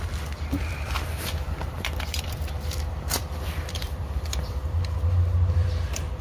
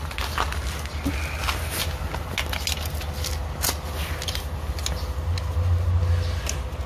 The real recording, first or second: second